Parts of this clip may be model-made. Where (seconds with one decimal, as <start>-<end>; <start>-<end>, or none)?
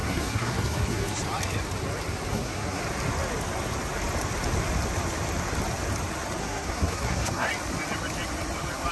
0.0-1.2; 2.3-2.8; 6.4-7.5